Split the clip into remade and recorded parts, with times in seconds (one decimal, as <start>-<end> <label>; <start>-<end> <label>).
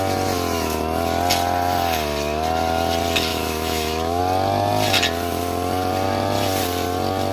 0.0-3.3 recorded; 3.3-4.2 remade; 4.2-7.3 recorded